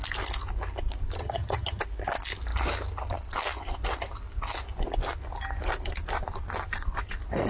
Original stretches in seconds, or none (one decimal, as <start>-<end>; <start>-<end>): 0.0-1.2; 1.8-7.5